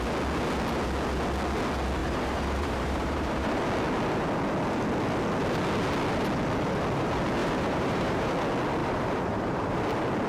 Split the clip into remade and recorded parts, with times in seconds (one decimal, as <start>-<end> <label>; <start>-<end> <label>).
0.0-2.0 recorded; 2.0-3.6 remade; 3.6-7.4 recorded; 7.4-8.3 remade; 8.3-8.8 recorded; 8.8-9.8 remade; 9.8-10.3 recorded